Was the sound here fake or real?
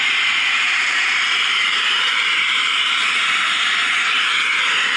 fake